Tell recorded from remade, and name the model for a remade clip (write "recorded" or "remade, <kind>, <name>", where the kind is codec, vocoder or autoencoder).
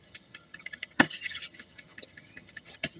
remade, vocoder, HiFi-GAN